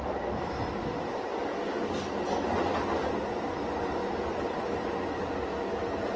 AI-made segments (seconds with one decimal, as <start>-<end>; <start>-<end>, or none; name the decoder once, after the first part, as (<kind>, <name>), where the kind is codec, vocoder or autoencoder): 4.0-5.3 (vocoder, BigVGAN v2)